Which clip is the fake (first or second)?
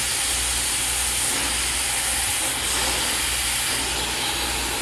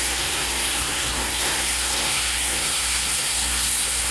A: second